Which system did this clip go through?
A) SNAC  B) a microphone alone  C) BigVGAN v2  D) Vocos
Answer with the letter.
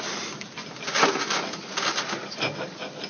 B